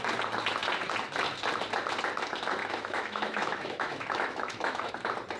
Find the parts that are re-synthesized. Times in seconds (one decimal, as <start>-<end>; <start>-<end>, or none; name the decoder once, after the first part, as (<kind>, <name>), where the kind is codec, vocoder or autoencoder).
2.6-4.9 (autoencoder, DAC-VAE)